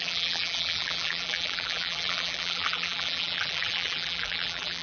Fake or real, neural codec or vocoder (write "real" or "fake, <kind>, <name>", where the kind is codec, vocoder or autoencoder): fake, vocoder, BigVGAN v2